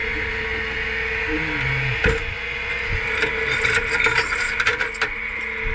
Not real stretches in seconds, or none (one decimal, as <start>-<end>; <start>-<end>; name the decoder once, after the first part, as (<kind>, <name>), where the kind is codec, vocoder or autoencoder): none